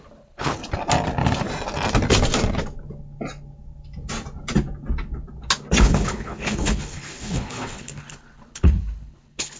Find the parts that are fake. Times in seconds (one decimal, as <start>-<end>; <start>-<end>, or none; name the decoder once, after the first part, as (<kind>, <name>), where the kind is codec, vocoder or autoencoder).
0.0-0.6 (codec, HILCodec); 5.8-9.6